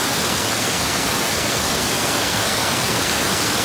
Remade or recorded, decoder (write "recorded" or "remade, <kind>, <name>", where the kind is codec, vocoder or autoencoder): remade, codec, SNAC